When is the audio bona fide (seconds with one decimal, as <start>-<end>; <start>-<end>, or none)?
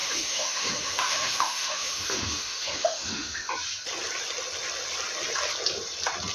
3.5-6.3